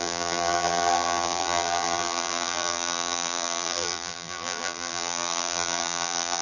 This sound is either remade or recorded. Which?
remade